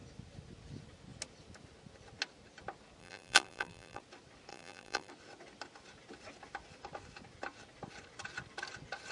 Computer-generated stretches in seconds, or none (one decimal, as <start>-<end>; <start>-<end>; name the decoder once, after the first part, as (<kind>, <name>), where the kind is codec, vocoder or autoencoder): 3.0-4.0 (vocoder, BigVGAN v2); 4.5-5.1